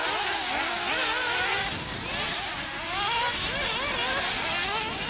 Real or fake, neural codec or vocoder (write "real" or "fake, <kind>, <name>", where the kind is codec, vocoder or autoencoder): real